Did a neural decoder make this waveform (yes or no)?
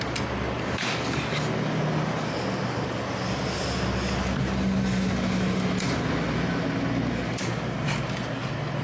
no